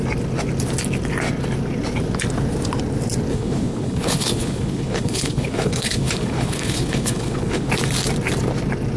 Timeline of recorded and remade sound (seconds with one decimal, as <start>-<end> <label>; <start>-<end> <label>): 0.0-3.3 recorded; 3.3-7.7 remade; 7.7-9.0 recorded